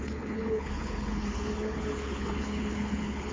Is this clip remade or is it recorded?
remade